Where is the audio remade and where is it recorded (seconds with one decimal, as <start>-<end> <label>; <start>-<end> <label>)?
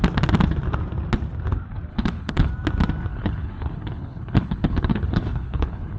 0.0-1.9 recorded; 1.9-2.5 remade; 2.5-3.1 recorded; 3.1-6.0 remade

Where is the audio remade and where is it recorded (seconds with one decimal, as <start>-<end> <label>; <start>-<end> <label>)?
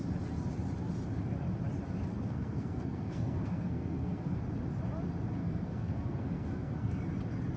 0.0-2.1 recorded; 2.1-4.4 remade; 4.4-5.4 recorded; 5.4-7.0 remade; 7.0-7.6 recorded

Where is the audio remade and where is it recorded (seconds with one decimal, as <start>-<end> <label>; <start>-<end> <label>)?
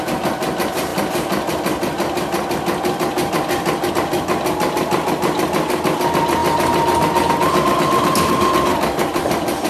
0.0-9.7 recorded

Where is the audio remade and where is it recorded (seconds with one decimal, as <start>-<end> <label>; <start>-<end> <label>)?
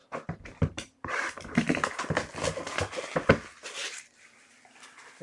0.0-2.0 remade; 2.0-3.8 recorded; 3.8-4.5 remade; 4.5-5.2 recorded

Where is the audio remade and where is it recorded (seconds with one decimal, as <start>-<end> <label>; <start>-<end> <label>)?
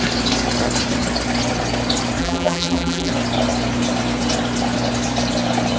0.0-2.2 recorded; 2.2-3.1 remade; 3.1-5.8 recorded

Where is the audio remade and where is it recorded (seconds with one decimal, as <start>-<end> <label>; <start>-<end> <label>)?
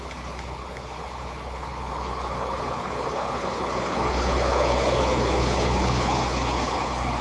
0.0-7.2 remade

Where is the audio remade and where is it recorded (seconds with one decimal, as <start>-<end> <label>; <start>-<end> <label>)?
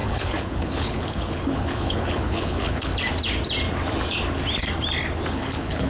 0.0-2.9 remade; 2.9-5.3 recorded; 5.3-5.9 remade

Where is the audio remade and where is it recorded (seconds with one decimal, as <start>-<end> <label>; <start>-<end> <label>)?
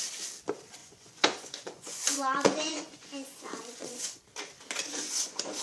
0.0-0.8 recorded; 0.8-4.2 remade; 4.2-4.8 recorded; 4.8-5.6 remade